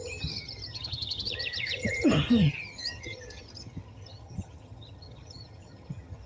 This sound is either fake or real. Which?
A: fake